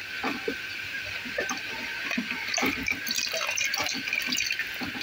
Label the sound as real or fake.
real